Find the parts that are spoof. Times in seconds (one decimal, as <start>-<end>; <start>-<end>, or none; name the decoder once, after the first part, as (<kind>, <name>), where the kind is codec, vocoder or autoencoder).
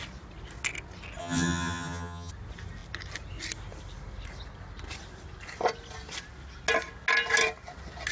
1.2-2.3 (vocoder, HiFi-GAN)